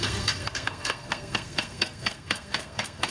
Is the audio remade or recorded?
remade